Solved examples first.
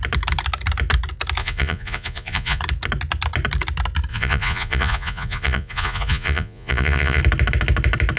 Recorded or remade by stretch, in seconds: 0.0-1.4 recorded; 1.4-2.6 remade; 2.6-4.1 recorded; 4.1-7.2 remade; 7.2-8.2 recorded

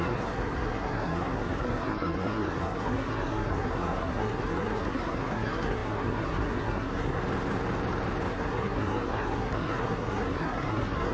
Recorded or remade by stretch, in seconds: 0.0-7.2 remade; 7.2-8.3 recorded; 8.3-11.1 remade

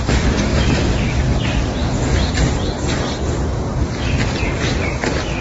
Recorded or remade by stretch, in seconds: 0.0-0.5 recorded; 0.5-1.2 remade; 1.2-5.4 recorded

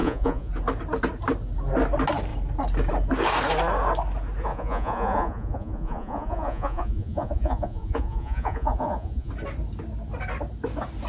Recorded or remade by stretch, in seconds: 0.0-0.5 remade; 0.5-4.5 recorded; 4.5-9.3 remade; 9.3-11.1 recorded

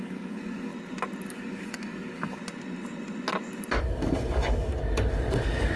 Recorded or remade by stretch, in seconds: 0.0-0.7 remade; 0.7-1.3 recorded; 1.3-2.4 remade; 2.4-3.8 recorded; 3.8-5.8 remade

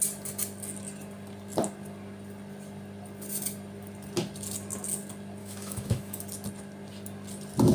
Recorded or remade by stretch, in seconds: 0.0-5.4 recorded; 5.4-6.2 remade; 6.2-7.7 recorded

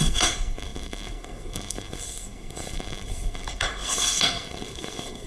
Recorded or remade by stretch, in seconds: 0.0-5.3 remade

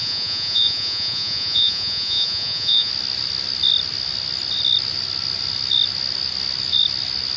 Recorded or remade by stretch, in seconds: 0.0-2.9 remade; 2.9-7.4 recorded